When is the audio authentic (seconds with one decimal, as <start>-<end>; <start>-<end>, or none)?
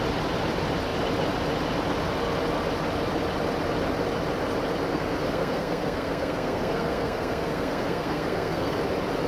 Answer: 0.0-4.9; 8.8-9.3